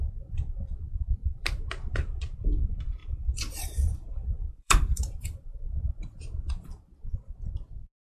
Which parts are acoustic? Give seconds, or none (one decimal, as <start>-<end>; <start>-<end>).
0.0-1.2; 2.1-3.0; 6.0-8.1